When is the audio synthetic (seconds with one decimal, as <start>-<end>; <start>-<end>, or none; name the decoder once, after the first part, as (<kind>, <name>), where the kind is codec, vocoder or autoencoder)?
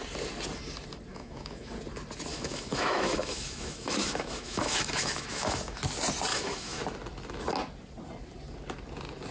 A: 1.1-1.7 (autoencoder, DAC-VAE); 2.3-5.8; 6.3-6.8